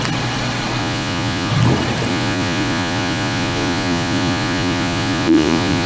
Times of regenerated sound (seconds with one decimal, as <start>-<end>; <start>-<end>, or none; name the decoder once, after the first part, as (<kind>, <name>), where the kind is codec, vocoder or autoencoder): 0.8-1.5 (vocoder, Vocos); 2.1-5.9